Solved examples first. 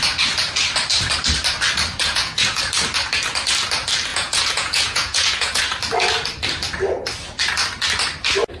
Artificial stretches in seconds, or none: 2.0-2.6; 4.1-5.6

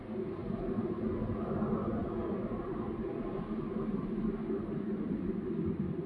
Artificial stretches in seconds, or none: none

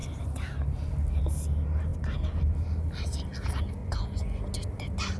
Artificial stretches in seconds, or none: 3.8-4.4

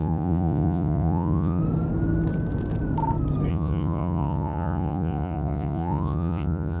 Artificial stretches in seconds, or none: 0.0-1.6; 3.5-6.8

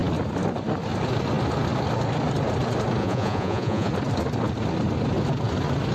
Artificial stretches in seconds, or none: 3.0-3.9

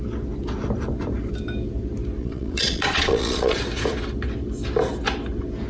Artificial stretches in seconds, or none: 2.2-3.6

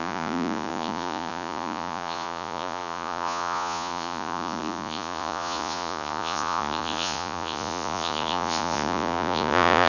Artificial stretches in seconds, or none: 0.0-9.9

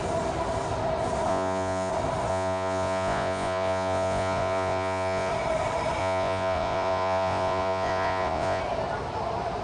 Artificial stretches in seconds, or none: 1.3-1.9; 2.3-5.3; 6.0-8.6